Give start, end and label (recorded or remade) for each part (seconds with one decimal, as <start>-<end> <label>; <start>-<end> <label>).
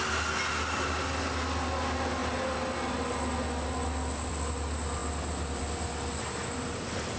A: 0.0-7.2 recorded